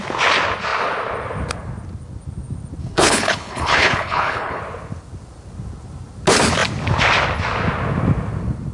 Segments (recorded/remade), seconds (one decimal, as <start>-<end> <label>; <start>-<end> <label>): 0.0-2.8 recorded; 2.8-4.6 remade; 4.6-8.7 recorded